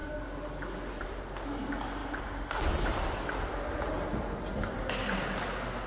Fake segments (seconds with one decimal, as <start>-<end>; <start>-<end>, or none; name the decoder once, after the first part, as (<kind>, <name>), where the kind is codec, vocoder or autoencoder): none

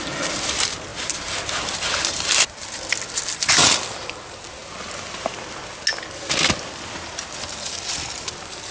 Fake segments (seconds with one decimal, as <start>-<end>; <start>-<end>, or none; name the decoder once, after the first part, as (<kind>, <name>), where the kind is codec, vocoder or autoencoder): none

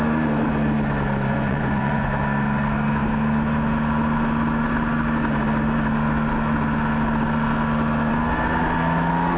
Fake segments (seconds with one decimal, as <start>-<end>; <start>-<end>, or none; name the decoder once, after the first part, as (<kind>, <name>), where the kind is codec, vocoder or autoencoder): 1.3-2.1 (vocoder, Vocos)